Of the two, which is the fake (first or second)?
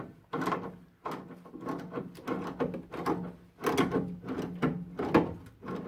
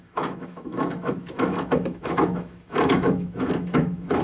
second